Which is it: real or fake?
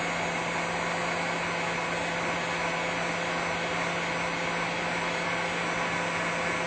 real